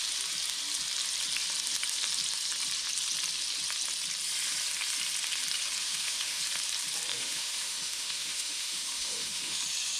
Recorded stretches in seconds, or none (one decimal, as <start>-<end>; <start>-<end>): 0.0-5.8; 6.4-7.1; 9.6-10.0